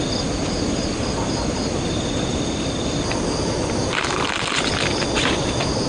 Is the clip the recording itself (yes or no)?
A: yes